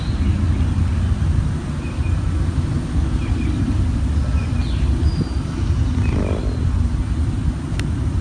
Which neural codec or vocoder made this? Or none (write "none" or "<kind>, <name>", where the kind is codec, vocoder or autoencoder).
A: none